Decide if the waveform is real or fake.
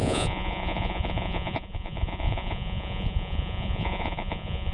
fake